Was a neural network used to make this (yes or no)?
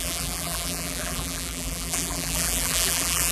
yes